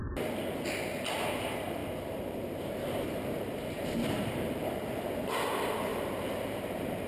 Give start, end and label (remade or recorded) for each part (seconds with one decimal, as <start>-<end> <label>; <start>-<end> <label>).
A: 0.0-1.8 recorded; 1.8-5.4 remade; 5.4-5.9 recorded; 5.9-7.1 remade